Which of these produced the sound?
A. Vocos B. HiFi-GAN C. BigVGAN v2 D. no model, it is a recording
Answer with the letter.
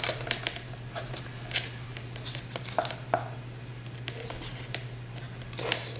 D